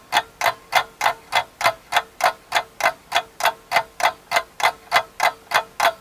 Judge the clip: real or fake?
real